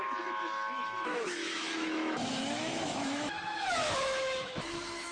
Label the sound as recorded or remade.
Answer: remade